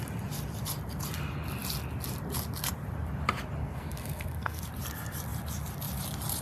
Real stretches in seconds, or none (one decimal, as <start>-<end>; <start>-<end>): 0.0-3.6; 4.6-6.4